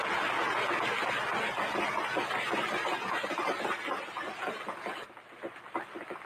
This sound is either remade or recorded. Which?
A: recorded